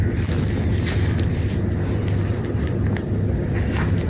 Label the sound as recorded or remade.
recorded